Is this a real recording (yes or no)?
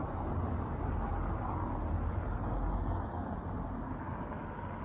yes